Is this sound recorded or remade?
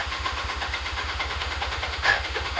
remade